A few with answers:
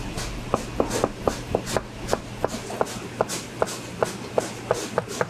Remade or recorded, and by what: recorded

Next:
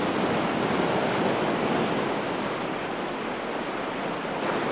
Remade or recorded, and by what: recorded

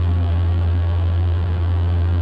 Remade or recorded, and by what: remade, vocoder, BigVGAN v2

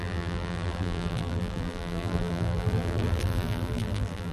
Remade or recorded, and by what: remade, vocoder, BigVGAN v2